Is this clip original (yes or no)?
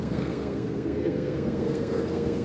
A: no